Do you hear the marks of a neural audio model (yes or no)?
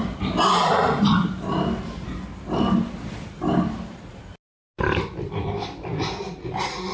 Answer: no